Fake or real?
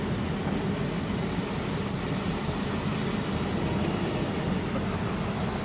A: real